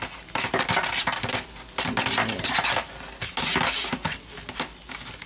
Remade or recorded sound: recorded